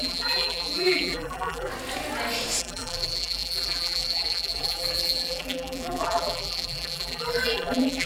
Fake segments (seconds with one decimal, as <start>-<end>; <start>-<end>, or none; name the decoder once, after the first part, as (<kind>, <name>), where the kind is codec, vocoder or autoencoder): 0.0-1.7 (vocoder, BigVGAN v2); 2.6-8.1